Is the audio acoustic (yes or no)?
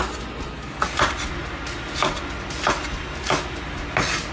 yes